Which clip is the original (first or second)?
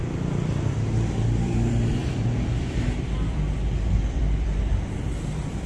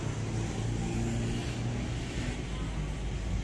second